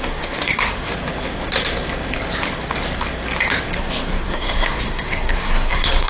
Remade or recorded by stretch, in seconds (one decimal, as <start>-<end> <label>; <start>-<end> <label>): 0.0-0.9 remade; 0.9-3.8 recorded; 3.8-6.1 remade